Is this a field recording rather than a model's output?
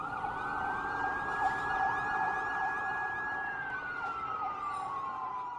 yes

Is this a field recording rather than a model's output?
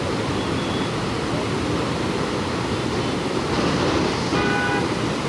yes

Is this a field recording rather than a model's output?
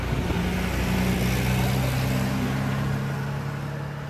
yes